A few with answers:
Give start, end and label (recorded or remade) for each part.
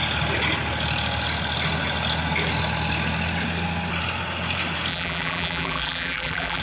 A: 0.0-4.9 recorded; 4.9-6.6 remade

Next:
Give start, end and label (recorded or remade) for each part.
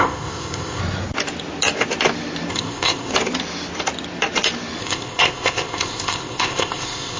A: 0.0-0.8 remade; 0.8-2.5 recorded; 2.5-3.1 remade; 3.1-4.8 recorded; 4.8-7.2 remade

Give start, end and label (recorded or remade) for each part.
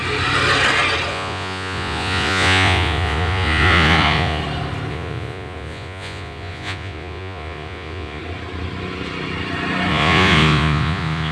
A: 0.0-1.1 recorded; 1.1-4.4 remade; 4.4-4.9 recorded; 4.9-8.2 remade; 8.2-9.9 recorded; 9.9-11.3 remade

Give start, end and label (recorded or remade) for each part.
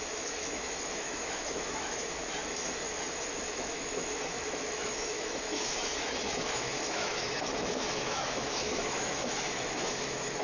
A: 0.0-10.4 remade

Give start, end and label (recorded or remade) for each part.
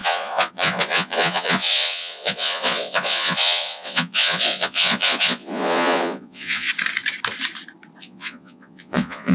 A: 0.0-6.7 remade; 6.7-8.0 recorded; 8.0-9.3 remade